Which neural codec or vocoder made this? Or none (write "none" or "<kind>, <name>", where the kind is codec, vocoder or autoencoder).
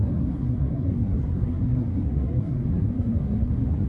codec, SNAC